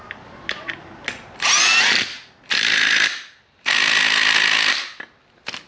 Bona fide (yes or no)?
yes